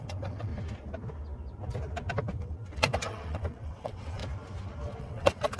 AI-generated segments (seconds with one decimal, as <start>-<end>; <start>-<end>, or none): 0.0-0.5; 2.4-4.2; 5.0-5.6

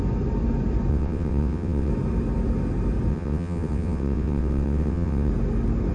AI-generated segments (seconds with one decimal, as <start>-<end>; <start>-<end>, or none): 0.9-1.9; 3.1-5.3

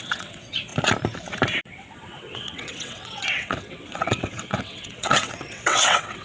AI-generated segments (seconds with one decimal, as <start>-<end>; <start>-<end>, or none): 0.0-0.7; 1.6-6.2